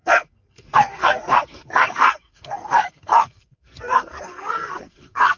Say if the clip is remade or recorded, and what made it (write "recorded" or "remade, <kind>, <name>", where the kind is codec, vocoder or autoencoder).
remade, codec, SNAC